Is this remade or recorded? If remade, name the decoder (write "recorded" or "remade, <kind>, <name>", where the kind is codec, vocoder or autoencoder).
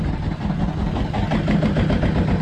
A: recorded